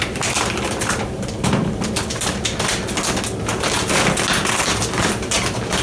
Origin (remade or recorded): recorded